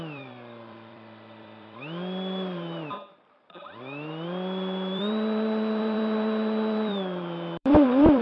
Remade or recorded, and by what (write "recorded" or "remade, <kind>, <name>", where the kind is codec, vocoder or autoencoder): remade, vocoder, BigVGAN v2